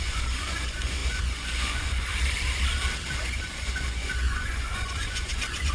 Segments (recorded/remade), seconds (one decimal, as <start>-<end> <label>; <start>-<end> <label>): 0.0-2.1 remade; 2.1-3.2 recorded; 3.2-5.7 remade